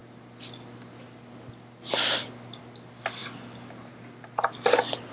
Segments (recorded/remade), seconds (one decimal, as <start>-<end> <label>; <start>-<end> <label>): 0.0-5.1 recorded